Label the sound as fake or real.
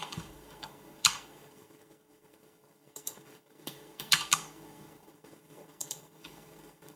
fake